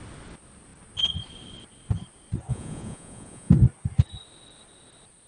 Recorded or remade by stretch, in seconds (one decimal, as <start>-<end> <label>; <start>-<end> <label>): 0.0-2.5 recorded; 2.5-3.5 remade; 3.5-5.3 recorded